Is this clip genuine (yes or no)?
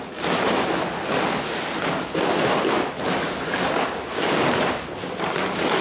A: yes